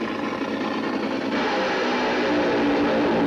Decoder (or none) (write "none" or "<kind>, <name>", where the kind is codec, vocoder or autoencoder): none